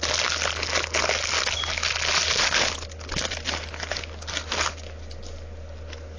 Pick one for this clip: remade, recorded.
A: recorded